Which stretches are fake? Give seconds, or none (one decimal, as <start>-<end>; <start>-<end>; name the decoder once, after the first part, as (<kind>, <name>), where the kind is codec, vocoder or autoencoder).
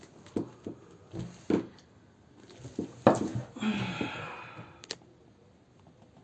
none